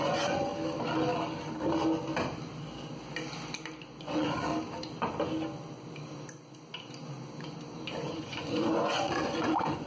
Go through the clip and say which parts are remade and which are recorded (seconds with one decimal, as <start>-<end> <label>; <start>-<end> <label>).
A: 0.0-0.5 remade; 0.5-4.0 recorded; 4.0-4.5 remade; 4.5-8.1 recorded; 8.1-9.9 remade